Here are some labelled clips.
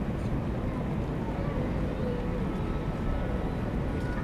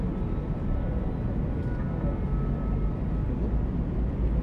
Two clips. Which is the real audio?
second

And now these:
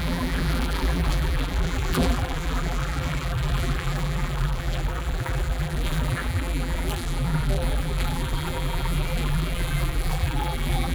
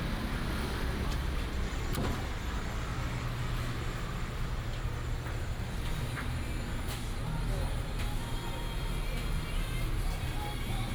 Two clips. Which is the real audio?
second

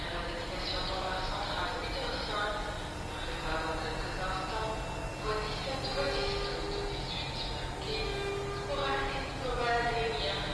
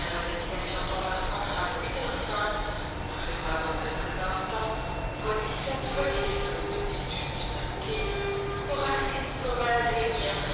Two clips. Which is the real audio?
first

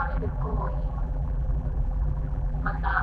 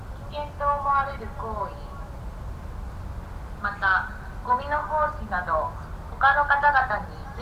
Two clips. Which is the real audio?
second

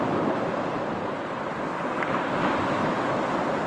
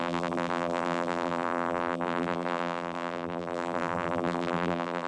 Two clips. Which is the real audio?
first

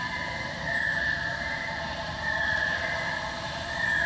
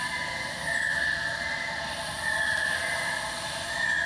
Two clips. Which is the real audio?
second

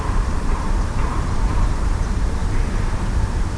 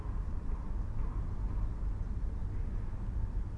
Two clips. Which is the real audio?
second